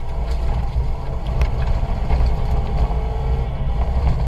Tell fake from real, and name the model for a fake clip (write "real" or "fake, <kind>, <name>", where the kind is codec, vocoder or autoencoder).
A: real